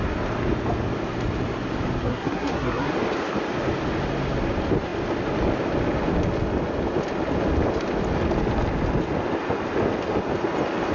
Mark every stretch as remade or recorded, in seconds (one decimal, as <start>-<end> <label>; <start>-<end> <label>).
0.0-2.0 recorded; 2.0-2.9 remade; 2.9-10.9 recorded